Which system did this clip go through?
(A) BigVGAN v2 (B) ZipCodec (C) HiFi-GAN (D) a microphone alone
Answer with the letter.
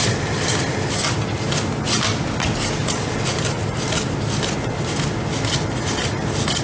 D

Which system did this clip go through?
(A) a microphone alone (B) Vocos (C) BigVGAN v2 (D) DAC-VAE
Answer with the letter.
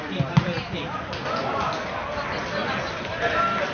A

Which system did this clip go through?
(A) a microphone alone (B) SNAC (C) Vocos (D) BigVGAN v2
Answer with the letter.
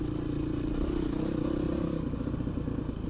A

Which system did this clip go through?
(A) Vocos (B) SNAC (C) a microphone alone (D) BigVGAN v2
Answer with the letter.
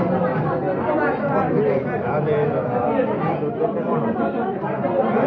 C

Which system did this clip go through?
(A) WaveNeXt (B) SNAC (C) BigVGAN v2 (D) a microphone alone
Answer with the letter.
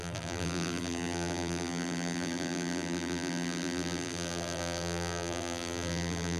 C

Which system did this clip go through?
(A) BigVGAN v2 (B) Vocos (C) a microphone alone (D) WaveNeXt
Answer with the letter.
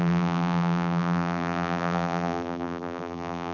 A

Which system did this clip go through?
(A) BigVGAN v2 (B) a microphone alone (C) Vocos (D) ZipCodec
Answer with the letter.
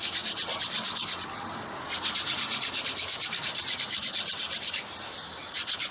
A